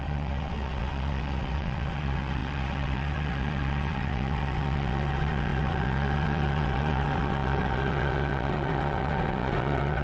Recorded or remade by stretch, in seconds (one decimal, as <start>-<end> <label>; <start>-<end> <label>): 0.0-10.0 remade